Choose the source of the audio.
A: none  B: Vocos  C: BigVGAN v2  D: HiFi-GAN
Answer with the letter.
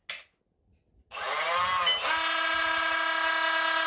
A